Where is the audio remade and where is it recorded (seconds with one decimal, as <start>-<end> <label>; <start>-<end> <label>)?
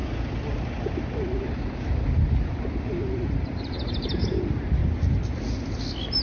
0.0-1.4 recorded; 1.4-4.8 remade; 4.8-6.2 recorded